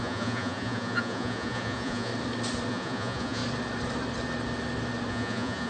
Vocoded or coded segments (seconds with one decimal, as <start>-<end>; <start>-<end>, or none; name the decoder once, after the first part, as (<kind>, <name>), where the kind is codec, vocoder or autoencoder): 0.0-2.1 (vocoder, Vocos); 2.7-3.4; 5.1-5.7